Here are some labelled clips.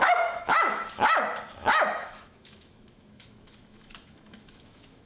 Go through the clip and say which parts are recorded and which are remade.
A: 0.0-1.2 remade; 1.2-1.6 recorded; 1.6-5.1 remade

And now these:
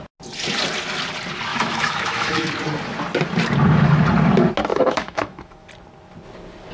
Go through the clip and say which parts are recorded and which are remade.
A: 0.0-1.5 recorded; 1.5-2.5 remade; 2.5-4.7 recorded; 4.7-5.7 remade; 5.7-6.7 recorded

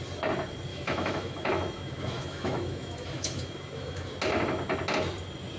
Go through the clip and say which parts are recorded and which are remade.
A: 0.0-0.7 recorded; 0.7-4.1 remade; 4.1-5.6 recorded

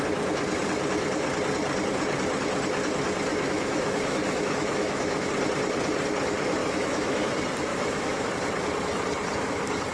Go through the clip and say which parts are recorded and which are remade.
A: 0.0-3.3 recorded; 3.3-5.3 remade; 5.3-6.6 recorded; 6.6-7.3 remade; 7.3-7.7 recorded; 7.7-8.3 remade; 8.3-9.9 recorded